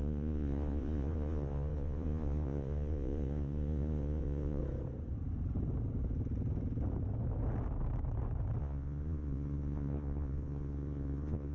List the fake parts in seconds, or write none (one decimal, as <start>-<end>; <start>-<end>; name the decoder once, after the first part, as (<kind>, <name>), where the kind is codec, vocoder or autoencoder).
0.0-4.6 (vocoder, Vocos); 8.6-11.5

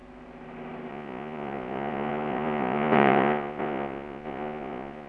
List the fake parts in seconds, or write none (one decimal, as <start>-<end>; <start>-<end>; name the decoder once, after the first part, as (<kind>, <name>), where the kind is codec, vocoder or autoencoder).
0.9-5.1 (vocoder, Vocos)

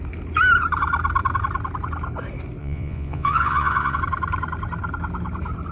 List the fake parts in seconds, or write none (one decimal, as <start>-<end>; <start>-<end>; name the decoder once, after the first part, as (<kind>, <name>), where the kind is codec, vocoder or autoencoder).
2.6-4.0 (vocoder, Vocos)

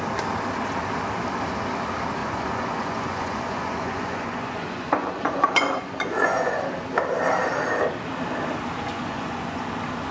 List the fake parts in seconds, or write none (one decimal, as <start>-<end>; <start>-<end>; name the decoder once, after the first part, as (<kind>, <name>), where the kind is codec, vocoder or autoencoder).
2.2-6.6 (vocoder, Vocos); 8.9-9.6

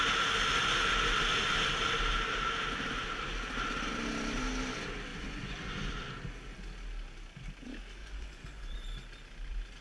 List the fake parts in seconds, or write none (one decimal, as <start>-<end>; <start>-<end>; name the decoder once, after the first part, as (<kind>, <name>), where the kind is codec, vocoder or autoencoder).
5.1-5.9 (vocoder, Vocos); 8.0-8.8

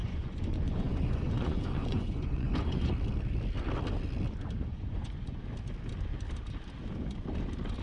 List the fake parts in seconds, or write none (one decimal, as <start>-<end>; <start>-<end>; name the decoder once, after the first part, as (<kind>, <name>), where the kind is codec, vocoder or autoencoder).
0.0-2.9 (vocoder, Vocos); 4.7-5.4